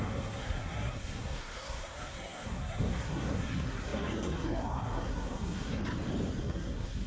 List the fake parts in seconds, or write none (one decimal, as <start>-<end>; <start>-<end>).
0.0-5.8; 6.4-7.1